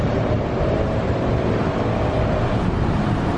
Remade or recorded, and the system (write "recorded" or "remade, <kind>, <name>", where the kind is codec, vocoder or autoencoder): remade, vocoder, BigVGAN v2